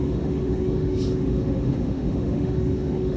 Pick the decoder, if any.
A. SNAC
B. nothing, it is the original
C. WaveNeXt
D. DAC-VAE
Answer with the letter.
D